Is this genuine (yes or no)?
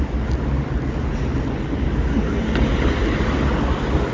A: yes